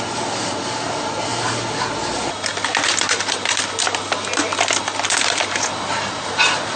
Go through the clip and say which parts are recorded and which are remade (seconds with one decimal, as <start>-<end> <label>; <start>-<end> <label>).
0.0-6.8 recorded